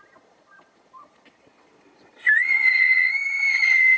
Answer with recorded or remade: remade